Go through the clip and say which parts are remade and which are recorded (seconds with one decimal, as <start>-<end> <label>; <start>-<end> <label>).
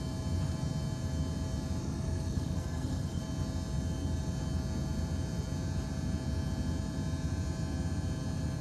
0.0-1.8 recorded; 1.8-3.2 remade; 3.2-8.6 recorded